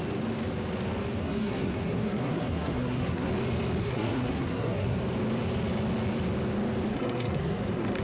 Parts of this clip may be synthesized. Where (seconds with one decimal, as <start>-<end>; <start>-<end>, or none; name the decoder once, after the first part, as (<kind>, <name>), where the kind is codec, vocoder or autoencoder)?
1.2-3.3 (codec, SNAC); 3.8-5.0; 6.9-8.0